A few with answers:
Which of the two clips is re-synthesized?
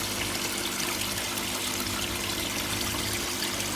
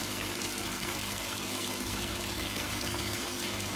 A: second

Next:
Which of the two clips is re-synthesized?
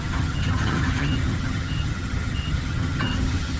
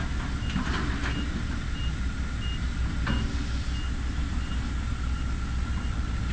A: first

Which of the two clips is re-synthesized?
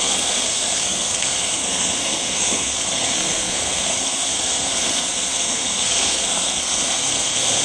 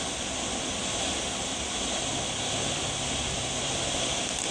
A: first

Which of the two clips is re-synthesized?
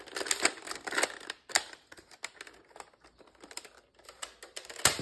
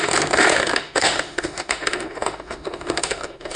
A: second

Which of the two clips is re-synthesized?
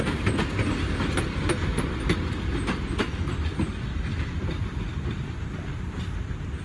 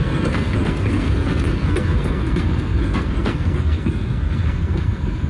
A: second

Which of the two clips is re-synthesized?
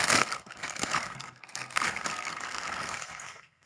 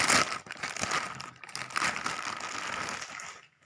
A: first